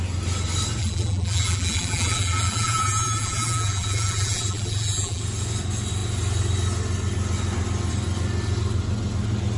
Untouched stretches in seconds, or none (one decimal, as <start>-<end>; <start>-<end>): 0.0-0.8; 5.2-9.6